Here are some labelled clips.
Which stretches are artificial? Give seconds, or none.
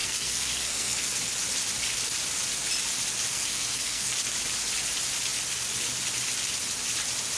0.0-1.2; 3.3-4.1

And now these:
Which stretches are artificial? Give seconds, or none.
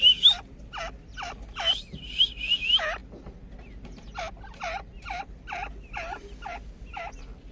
none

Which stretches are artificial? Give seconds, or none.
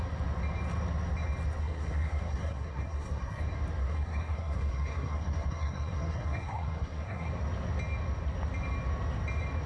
1.6-3.4; 3.8-7.3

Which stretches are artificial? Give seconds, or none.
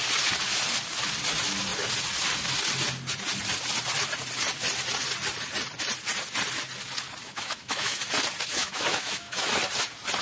7.2-8.0; 8.5-9.6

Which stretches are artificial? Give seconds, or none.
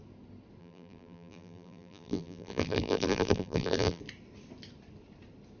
0.6-4.0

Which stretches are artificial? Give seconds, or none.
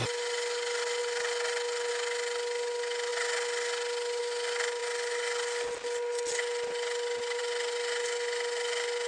none